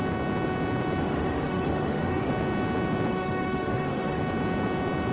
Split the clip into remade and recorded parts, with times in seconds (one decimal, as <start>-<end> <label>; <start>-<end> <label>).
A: 0.0-1.0 recorded; 1.0-2.3 remade; 2.3-3.1 recorded; 3.1-4.2 remade; 4.2-5.1 recorded